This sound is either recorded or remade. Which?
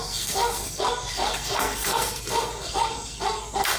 remade